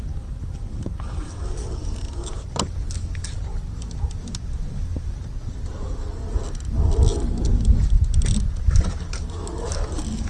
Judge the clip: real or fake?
real